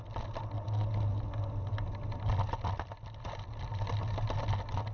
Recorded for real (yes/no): yes